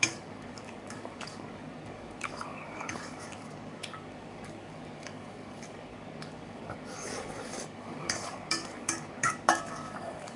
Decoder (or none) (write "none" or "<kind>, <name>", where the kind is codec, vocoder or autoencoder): codec, DAC